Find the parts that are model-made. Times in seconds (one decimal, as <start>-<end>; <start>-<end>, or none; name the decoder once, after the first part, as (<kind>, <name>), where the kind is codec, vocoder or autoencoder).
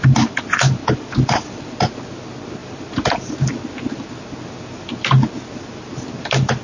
none